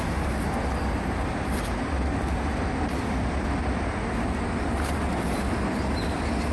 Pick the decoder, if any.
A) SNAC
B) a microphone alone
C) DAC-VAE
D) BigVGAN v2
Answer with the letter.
B